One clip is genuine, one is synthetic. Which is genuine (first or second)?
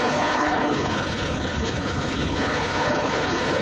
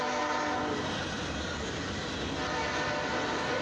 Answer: second